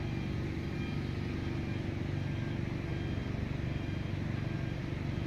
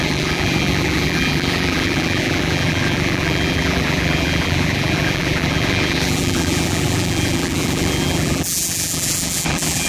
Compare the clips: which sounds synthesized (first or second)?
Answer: second